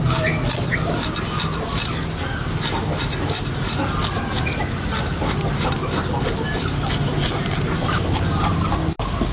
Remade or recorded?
recorded